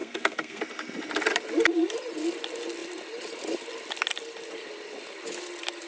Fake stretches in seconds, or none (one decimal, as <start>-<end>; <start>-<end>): 0.0-0.6